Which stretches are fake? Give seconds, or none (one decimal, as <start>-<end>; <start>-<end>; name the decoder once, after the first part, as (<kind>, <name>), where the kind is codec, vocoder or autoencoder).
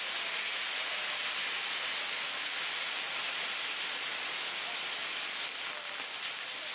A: none